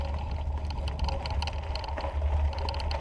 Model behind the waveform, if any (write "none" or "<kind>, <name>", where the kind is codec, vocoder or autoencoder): none